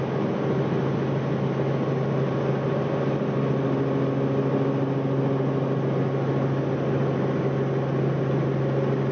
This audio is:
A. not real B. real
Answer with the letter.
B